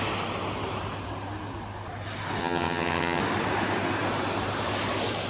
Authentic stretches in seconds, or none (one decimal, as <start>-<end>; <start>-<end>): 0.0-2.4; 3.2-5.3